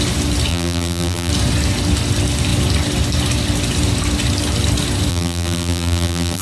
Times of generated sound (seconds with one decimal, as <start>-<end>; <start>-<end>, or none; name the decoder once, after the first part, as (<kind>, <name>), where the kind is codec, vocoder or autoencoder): 0.5-1.3 (vocoder, BigVGAN v2); 5.1-6.4